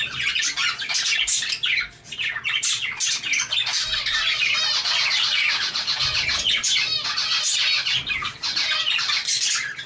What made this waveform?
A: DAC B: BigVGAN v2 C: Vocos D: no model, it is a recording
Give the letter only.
D